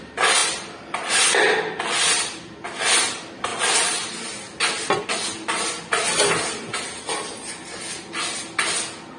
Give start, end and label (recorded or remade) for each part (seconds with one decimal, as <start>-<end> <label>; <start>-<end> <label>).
0.0-9.2 recorded